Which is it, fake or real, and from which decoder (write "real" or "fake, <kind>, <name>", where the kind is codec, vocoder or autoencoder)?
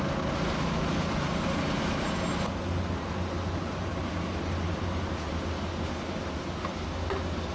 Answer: real